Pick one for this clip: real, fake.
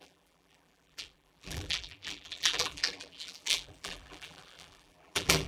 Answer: fake